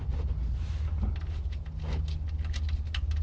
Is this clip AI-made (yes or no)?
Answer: no